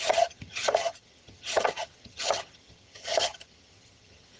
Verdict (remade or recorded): remade